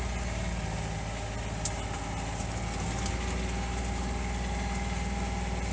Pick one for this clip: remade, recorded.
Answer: recorded